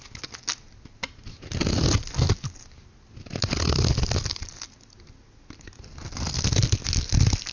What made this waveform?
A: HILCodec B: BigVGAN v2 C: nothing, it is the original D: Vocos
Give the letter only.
C